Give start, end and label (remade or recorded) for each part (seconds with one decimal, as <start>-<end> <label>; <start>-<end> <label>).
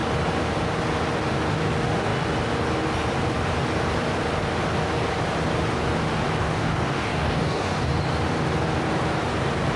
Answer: 0.0-6.4 recorded; 6.4-8.0 remade; 8.0-9.8 recorded